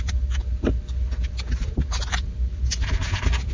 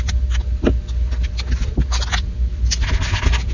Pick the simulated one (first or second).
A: first